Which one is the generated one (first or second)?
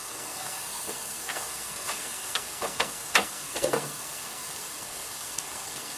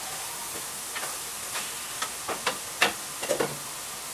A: first